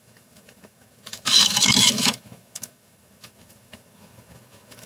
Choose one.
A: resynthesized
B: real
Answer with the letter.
A